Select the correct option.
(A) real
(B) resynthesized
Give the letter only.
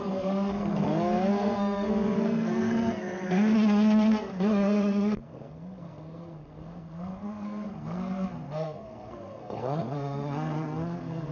B